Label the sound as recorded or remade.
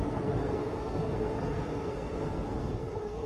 remade